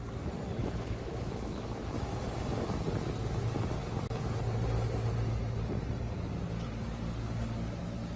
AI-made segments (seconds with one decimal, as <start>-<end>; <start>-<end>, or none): 0.6-2.2